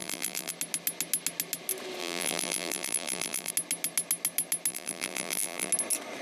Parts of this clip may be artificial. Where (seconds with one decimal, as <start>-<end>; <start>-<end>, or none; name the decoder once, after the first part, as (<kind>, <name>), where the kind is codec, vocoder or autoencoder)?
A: 0.0-0.5 (vocoder, BigVGAN v2); 2.0-3.5; 4.7-5.7